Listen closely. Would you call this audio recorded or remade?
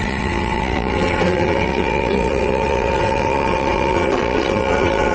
remade